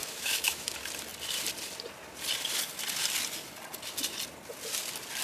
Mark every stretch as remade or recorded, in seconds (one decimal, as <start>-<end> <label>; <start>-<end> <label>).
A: 0.0-0.7 remade; 0.7-5.2 recorded